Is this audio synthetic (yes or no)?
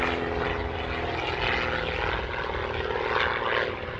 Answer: no